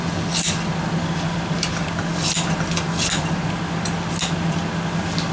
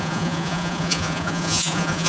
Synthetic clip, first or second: second